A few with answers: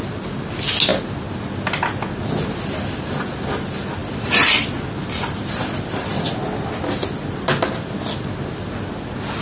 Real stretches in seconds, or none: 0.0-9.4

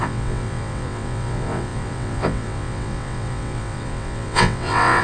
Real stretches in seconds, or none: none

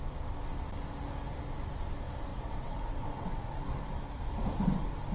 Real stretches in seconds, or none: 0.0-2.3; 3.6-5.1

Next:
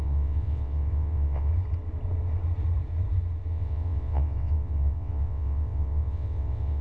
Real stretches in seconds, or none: 1.5-3.5